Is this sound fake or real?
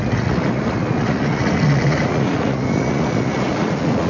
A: fake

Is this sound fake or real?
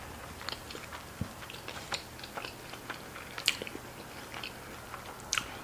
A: real